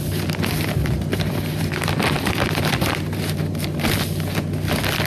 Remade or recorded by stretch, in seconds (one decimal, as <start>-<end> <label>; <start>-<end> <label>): 0.0-1.1 recorded; 1.1-3.9 remade; 3.9-5.1 recorded